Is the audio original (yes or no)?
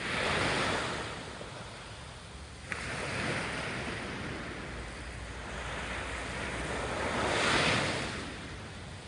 yes